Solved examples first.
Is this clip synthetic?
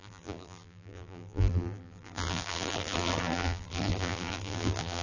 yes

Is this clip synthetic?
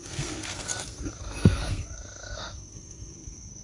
yes